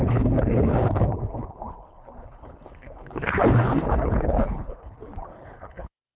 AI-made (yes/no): yes